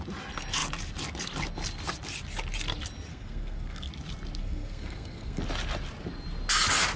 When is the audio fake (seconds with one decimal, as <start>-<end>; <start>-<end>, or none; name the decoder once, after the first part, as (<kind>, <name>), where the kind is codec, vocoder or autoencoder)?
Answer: 3.1-3.9 (codec, SNAC); 4.4-5.4

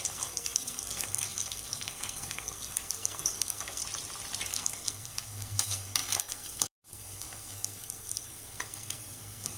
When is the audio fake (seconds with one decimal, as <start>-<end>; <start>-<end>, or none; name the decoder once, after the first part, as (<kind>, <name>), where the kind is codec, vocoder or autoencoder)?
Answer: 0.0-3.8 (codec, SNAC); 4.5-9.6

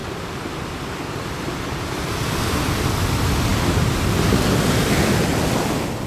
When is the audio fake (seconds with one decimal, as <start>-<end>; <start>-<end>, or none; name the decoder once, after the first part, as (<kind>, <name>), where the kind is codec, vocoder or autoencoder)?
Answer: none

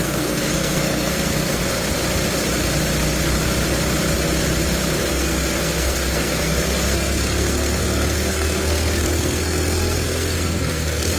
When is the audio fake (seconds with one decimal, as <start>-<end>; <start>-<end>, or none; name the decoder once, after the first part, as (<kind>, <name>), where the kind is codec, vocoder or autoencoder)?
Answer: 0.0-1.6 (codec, SNAC); 5.1-11.2

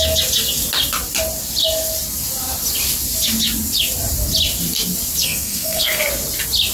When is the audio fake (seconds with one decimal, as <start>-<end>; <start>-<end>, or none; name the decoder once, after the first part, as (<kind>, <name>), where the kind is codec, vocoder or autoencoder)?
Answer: 5.2-6.0 (codec, SNAC)